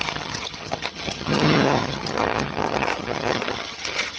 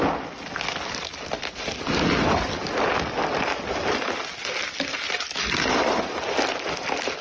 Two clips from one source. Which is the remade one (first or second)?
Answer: first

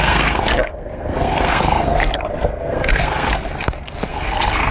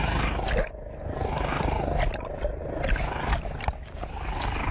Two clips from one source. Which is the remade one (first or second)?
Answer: first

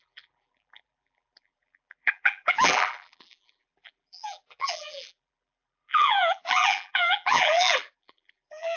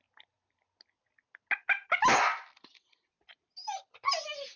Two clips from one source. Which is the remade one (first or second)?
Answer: first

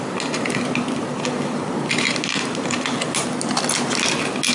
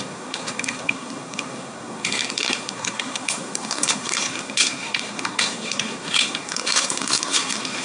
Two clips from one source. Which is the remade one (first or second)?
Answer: second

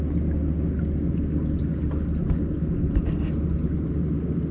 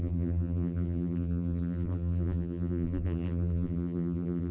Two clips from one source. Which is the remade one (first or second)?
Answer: second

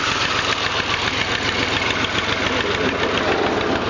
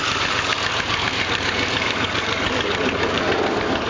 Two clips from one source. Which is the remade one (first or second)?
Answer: second